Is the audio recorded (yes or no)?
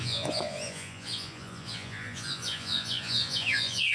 no